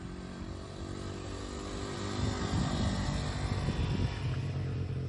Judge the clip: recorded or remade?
recorded